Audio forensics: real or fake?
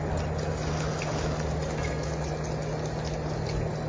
real